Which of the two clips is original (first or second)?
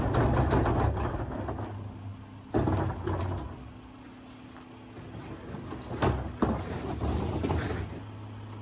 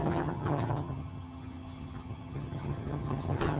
first